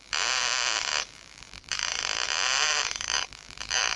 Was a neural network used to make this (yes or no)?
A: yes